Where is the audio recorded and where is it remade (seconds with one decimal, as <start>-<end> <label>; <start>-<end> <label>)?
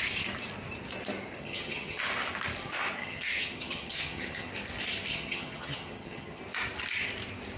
0.0-1.4 recorded; 1.4-2.0 remade; 2.0-3.0 recorded; 3.0-4.5 remade; 4.5-5.1 recorded; 5.1-6.4 remade; 6.4-7.6 recorded